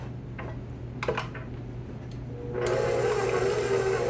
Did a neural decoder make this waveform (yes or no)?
no